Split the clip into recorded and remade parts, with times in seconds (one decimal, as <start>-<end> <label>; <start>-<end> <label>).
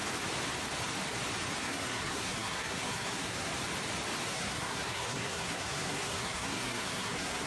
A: 0.0-1.6 recorded; 1.6-3.5 remade; 3.5-4.2 recorded; 4.2-7.5 remade